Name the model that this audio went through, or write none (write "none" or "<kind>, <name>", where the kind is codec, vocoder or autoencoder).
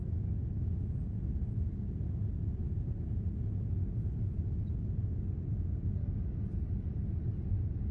none